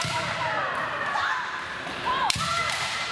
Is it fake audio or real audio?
fake